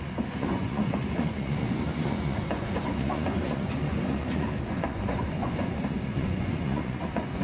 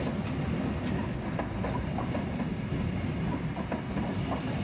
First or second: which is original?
second